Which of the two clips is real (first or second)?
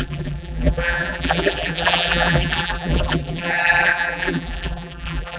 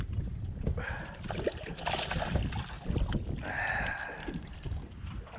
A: second